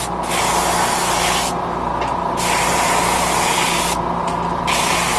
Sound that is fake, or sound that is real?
real